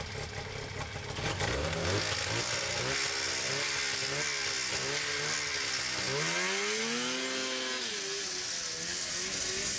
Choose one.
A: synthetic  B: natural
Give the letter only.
B